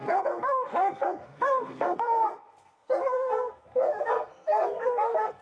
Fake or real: fake